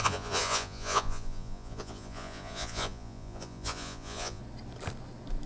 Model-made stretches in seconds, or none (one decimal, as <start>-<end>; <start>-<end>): 0.0-4.4